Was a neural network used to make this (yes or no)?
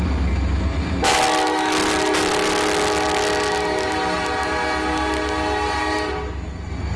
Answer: no